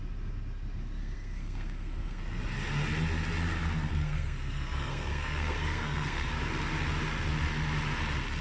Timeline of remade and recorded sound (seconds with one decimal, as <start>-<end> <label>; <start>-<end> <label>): 0.0-1.0 recorded; 1.0-2.2 remade; 2.2-3.9 recorded; 3.9-6.3 remade; 6.3-8.4 recorded